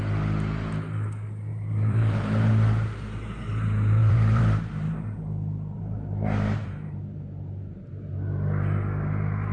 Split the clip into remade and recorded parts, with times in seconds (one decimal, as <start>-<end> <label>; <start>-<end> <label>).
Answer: 0.0-1.5 recorded; 1.5-2.5 remade; 2.5-4.0 recorded; 4.0-4.6 remade; 4.6-9.5 recorded